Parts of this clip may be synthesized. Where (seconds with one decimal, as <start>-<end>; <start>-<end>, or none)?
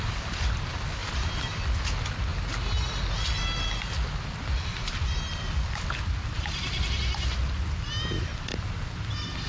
1.0-1.6